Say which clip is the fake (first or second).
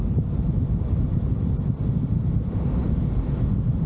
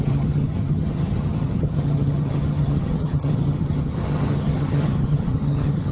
second